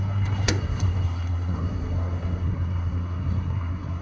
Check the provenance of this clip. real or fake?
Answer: fake